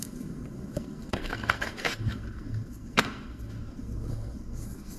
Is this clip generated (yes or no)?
yes